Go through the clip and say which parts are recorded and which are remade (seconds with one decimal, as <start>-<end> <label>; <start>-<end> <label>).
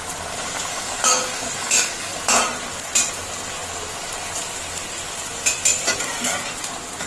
0.0-0.7 recorded; 0.7-2.2 remade; 2.2-7.1 recorded